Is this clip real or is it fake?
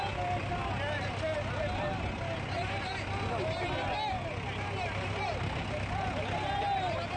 real